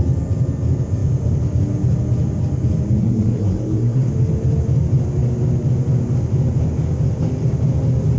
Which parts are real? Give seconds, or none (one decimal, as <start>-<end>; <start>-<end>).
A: 0.0-3.0; 4.1-8.2